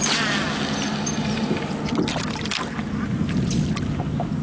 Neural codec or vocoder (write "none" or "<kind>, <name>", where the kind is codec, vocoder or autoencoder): none